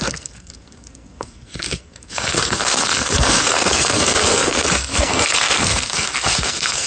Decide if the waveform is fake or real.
fake